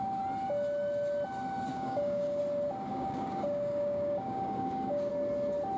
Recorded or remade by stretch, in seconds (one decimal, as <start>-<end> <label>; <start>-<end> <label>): 0.0-1.7 recorded; 1.7-2.4 remade; 2.4-2.9 recorded; 2.9-5.1 remade; 5.1-5.8 recorded